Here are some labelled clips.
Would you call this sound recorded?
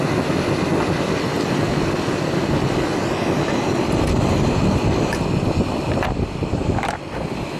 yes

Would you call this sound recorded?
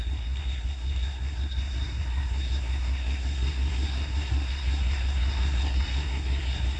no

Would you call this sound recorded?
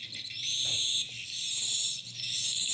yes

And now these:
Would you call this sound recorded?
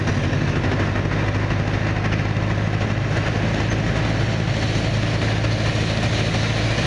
yes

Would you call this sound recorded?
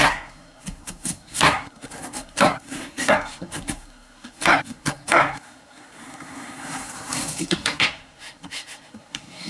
no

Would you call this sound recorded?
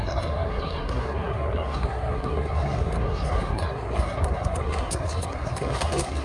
no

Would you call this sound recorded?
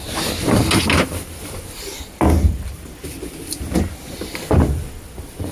yes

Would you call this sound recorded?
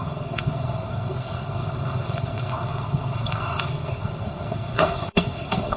no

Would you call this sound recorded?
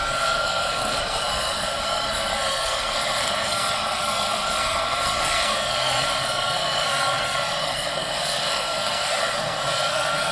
no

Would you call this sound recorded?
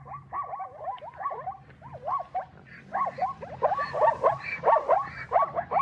yes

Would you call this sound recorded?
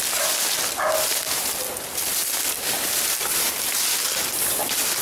yes